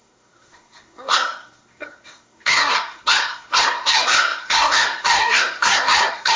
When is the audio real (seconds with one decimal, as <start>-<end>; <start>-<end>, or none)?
none